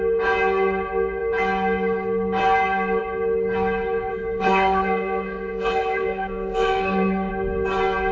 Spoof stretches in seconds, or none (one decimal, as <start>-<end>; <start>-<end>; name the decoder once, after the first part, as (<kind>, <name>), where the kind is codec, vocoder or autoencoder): 4.1-7.3 (codec, SNAC)